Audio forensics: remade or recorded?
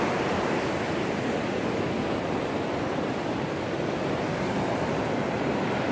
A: remade